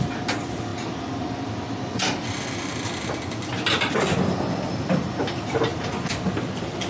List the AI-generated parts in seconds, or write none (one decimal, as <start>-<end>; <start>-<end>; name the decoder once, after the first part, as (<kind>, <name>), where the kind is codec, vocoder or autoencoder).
none